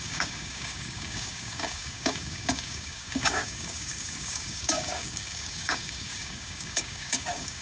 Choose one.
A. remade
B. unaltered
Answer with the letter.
A